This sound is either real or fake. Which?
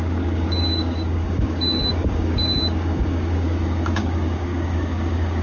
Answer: fake